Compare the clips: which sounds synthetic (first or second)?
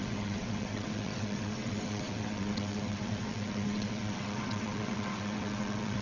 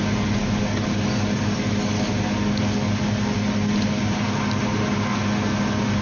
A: first